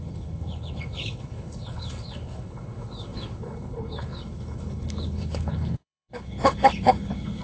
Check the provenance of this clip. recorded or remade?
remade